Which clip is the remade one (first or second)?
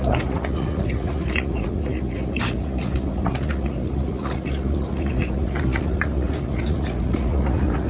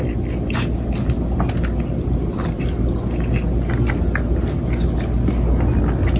first